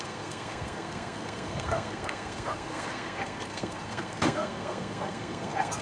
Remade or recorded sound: remade